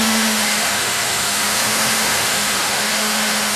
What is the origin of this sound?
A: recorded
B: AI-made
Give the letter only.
B